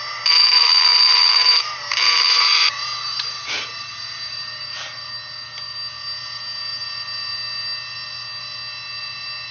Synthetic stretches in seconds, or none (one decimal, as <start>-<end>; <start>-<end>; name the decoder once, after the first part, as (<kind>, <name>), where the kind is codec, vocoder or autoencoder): 0.9-5.1 (vocoder, BigVGAN v2)